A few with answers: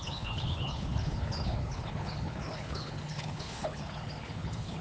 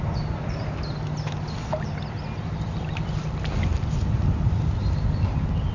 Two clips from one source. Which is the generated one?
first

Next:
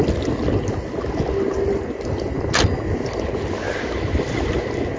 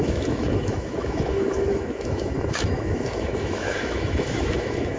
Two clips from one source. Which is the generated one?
second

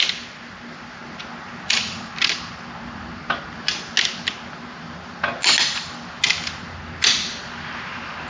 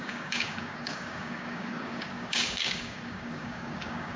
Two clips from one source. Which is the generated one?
second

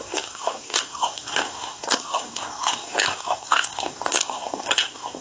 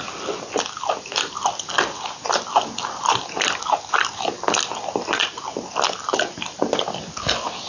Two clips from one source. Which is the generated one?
first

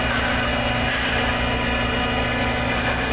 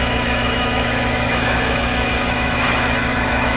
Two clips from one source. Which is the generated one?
second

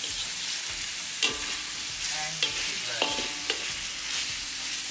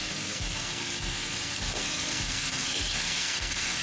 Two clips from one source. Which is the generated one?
second